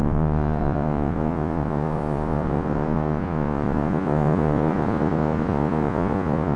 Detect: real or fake fake